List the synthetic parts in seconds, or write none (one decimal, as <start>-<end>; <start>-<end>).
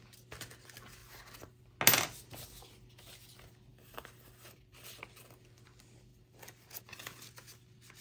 1.0-1.6; 3.7-5.0; 6.1-6.8